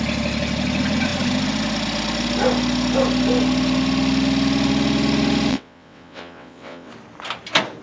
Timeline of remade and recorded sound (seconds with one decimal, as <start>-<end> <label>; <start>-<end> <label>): 0.0-5.5 recorded; 5.5-6.9 remade; 6.9-7.8 recorded